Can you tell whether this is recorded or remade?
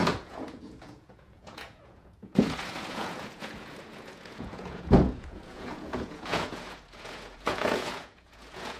remade